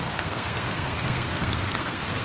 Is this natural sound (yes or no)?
no